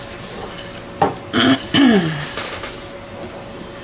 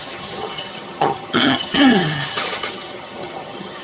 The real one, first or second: first